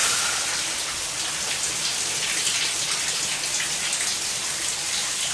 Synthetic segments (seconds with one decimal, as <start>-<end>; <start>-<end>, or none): none